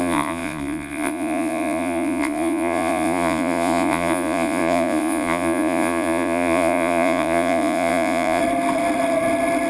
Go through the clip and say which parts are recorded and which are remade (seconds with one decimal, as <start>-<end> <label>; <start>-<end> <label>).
0.0-8.4 remade; 8.4-9.7 recorded